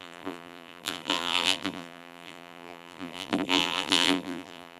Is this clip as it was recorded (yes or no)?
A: no